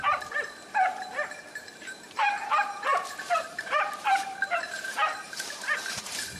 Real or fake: fake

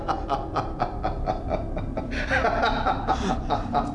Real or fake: real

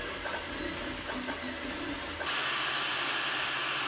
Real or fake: real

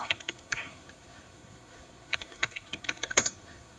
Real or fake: fake